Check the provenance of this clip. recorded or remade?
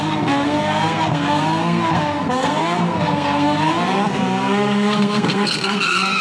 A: remade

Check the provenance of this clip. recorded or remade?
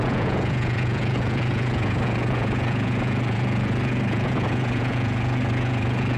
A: remade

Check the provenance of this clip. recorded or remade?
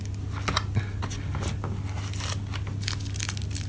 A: recorded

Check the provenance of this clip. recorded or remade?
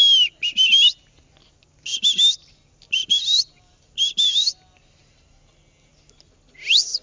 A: recorded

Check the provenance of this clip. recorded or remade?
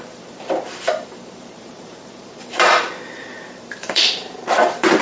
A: remade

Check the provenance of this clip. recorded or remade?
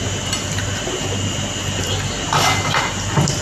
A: recorded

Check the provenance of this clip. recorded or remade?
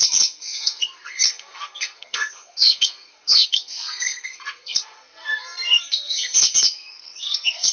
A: remade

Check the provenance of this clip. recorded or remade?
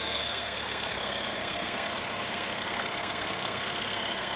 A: remade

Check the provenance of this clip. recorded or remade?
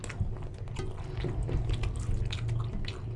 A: recorded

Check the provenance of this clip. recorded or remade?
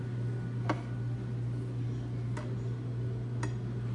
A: recorded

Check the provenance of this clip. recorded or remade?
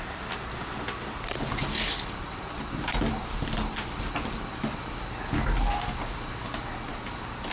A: recorded